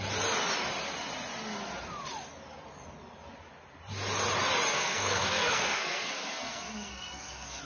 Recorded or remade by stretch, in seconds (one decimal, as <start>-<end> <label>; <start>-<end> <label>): 0.0-4.7 recorded; 4.7-7.6 remade